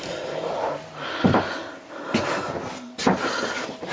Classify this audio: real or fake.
real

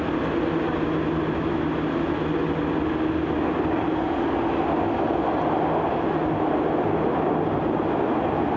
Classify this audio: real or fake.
real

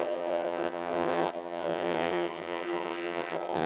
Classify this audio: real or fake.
fake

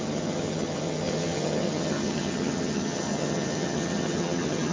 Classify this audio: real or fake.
fake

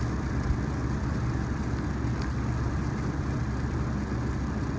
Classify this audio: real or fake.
real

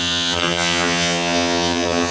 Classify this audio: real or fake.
fake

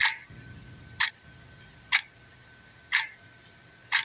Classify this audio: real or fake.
real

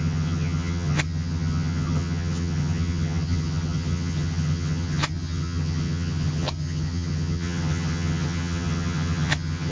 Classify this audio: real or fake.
fake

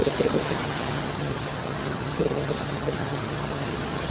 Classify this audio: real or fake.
fake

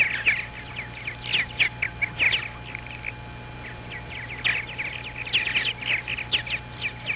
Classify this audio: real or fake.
real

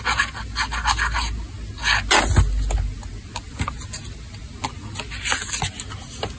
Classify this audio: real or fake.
real